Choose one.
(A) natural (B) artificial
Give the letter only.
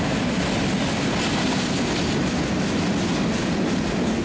A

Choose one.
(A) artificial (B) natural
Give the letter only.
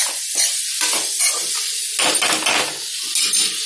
B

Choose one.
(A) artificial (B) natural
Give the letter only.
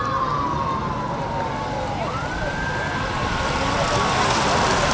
B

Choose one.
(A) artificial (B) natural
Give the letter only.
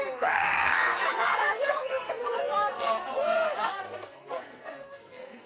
A